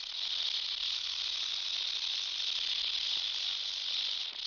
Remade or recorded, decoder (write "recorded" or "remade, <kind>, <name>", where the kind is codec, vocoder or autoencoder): recorded